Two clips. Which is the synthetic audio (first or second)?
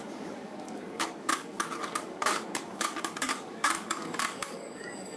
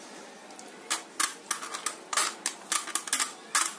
first